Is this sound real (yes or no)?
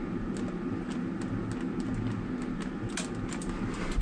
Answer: yes